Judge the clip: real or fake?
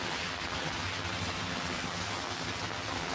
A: real